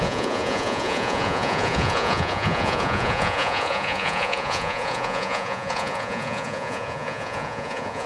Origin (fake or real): fake